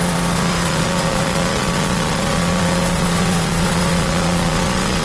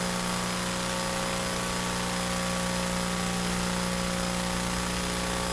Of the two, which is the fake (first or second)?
first